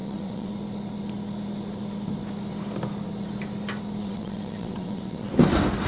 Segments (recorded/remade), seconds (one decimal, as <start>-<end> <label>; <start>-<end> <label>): 0.0-0.5 remade; 0.5-4.0 recorded; 4.0-5.3 remade; 5.3-5.9 recorded